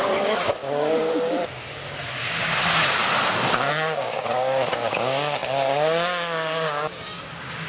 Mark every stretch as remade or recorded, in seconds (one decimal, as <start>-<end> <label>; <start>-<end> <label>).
0.0-3.0 remade; 3.0-3.7 recorded; 3.7-7.7 remade